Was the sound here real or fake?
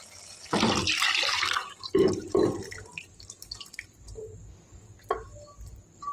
fake